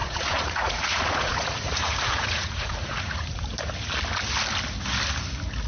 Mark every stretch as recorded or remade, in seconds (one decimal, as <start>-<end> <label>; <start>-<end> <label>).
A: 0.0-3.4 remade; 3.4-5.7 recorded